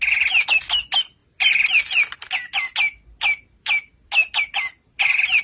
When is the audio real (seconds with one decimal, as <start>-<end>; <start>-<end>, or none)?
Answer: 0.0-5.4